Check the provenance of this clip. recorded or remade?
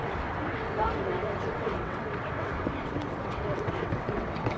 remade